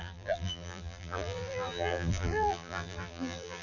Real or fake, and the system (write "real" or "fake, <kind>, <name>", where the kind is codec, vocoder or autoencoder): fake, vocoder, BigVGAN v2